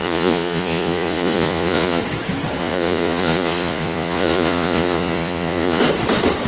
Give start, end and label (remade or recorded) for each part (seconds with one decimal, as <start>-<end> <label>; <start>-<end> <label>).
0.0-2.0 remade; 2.0-2.6 recorded; 2.6-5.8 remade; 5.8-6.5 recorded